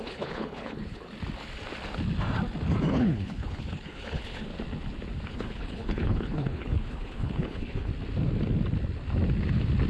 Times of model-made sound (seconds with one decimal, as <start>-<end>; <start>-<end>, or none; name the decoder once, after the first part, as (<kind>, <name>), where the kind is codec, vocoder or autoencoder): 0.0-1.1 (codec, HILCodec); 2.9-4.5; 5.3-7.9